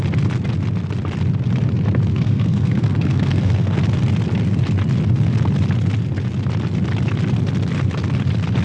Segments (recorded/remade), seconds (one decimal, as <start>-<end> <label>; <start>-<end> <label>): 0.0-2.1 recorded; 2.1-3.8 remade; 3.8-8.6 recorded